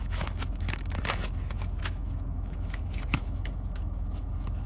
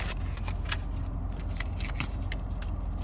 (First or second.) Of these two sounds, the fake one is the first